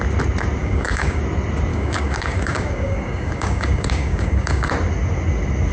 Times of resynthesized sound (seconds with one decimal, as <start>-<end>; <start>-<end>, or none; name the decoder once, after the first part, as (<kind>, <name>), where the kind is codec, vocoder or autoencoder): 0.6-1.2 (codec, DAC); 1.7-4.7